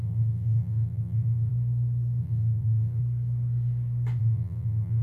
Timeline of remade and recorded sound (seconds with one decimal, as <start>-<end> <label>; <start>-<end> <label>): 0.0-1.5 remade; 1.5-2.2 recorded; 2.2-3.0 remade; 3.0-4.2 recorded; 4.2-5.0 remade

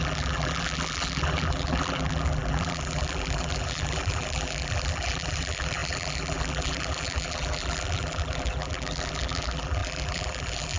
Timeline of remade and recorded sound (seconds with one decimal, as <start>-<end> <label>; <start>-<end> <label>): 0.0-10.8 remade

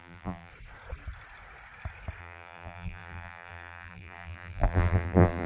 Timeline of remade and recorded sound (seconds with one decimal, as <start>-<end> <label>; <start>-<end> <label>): 0.0-0.5 remade; 0.5-2.2 recorded; 2.2-5.5 remade

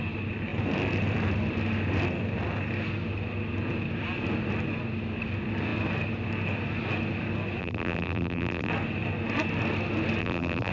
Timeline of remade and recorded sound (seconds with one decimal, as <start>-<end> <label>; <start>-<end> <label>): 0.0-7.6 recorded; 7.6-8.7 remade; 8.7-10.2 recorded; 10.2-10.7 remade